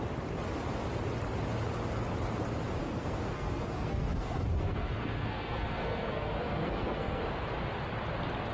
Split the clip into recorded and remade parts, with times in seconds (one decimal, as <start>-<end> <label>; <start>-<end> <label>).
0.0-2.8 recorded; 2.8-7.2 remade; 7.2-8.5 recorded